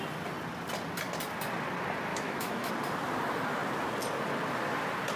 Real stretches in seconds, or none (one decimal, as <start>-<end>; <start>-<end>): 0.0-2.1; 2.7-5.2